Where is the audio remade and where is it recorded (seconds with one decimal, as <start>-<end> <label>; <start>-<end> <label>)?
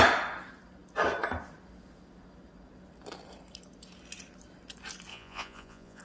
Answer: 0.0-5.1 recorded; 5.1-6.0 remade